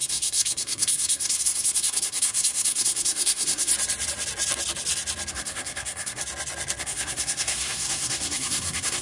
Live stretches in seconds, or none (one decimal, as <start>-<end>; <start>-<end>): 3.7-5.3; 6.2-6.8